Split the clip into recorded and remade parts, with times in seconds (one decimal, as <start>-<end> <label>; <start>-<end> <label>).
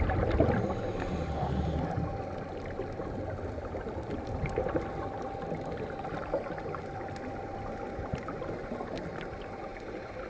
0.0-10.3 recorded